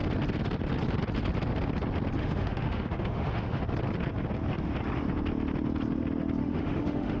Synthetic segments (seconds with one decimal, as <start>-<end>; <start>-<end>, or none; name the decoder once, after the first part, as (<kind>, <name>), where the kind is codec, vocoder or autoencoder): 2.2-3.6 (autoencoder, DAC-VAE); 6.4-7.2